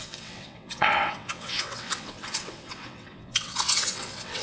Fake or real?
fake